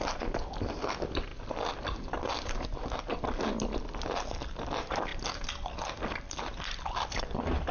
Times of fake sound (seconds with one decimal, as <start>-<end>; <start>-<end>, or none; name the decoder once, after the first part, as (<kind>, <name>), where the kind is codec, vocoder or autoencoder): 1.3-3.4 (vocoder, BigVGAN v2); 5.1-7.7